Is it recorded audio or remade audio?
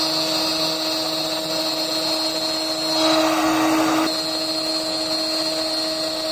recorded